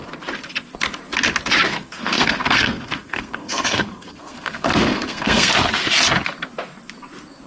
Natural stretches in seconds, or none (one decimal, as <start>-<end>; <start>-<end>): 0.0-1.7; 5.5-7.5